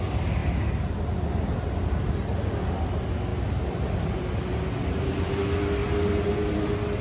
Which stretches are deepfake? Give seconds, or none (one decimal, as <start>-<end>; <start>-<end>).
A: none